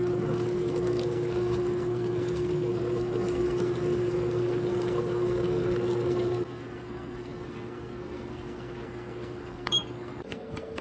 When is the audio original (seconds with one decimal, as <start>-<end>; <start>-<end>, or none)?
none